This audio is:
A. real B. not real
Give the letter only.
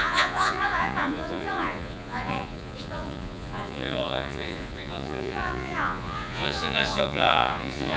B